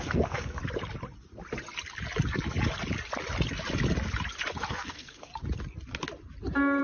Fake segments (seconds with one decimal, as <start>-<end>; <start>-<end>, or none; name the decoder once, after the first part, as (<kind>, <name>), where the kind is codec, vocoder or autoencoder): 0.0-0.6 (codec, SNAC); 4.7-5.3